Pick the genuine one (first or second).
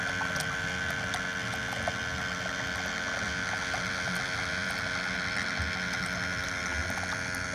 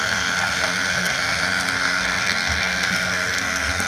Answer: first